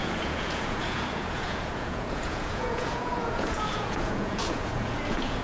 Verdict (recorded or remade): remade